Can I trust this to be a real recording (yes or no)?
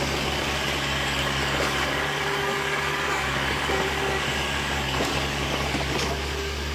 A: no